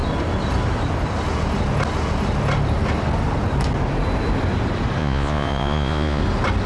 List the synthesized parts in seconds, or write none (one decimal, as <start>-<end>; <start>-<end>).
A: 5.0-6.2